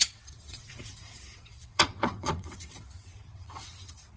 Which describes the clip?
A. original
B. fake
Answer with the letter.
B